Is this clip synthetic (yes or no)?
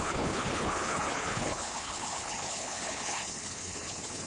yes